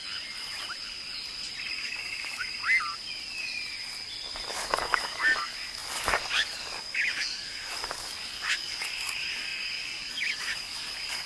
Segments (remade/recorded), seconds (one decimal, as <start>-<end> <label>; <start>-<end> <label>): 0.0-1.7 recorded; 1.7-2.6 remade; 2.6-4.5 recorded; 4.5-11.3 remade

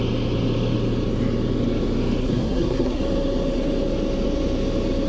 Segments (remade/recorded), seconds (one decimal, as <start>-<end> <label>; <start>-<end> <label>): 0.0-2.2 recorded; 2.2-3.0 remade; 3.0-5.1 recorded

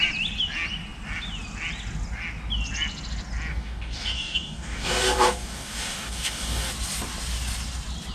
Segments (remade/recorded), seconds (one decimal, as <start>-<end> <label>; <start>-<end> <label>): 0.0-3.5 recorded; 3.5-6.7 remade; 6.7-8.1 recorded

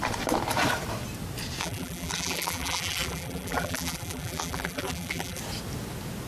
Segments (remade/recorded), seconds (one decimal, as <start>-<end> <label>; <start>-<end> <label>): 0.0-1.6 recorded; 1.6-5.4 remade; 5.4-6.3 recorded